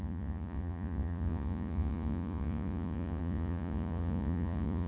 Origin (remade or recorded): remade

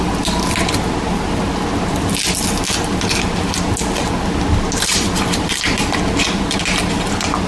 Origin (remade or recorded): recorded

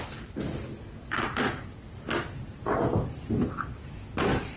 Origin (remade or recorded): recorded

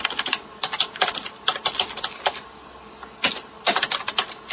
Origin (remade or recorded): recorded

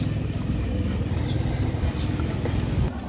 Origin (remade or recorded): recorded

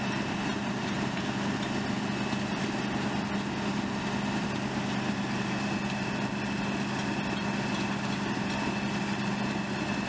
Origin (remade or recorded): recorded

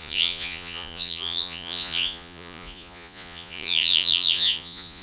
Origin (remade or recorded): remade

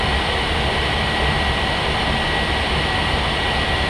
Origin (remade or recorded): recorded